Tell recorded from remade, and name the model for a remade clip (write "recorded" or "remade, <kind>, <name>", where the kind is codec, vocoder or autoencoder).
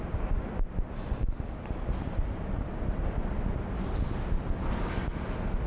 recorded